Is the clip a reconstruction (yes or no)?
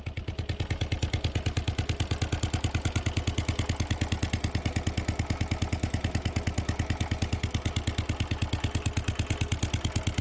no